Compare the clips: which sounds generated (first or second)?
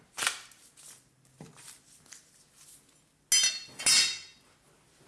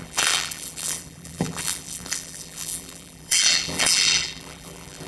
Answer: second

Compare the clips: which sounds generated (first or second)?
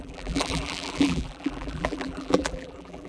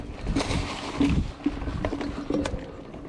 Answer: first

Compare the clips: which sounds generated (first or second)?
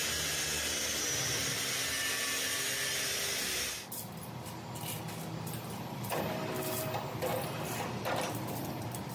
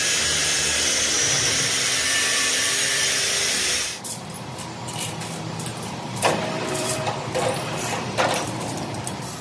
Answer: second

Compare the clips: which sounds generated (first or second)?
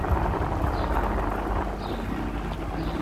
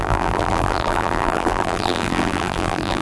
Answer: second